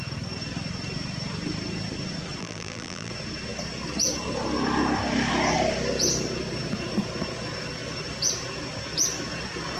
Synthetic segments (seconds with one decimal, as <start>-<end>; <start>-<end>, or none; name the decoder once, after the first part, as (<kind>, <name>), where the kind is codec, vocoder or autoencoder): 2.4-3.1 (vocoder, BigVGAN v2)